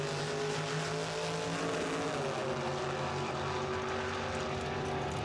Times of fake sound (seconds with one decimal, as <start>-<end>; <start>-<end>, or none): none